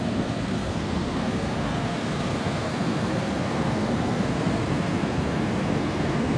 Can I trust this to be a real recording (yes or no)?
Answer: no